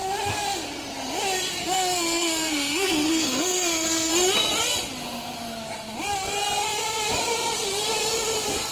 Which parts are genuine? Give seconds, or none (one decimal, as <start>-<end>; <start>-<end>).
0.0-1.6; 4.1-8.7